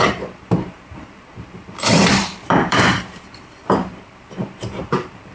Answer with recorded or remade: remade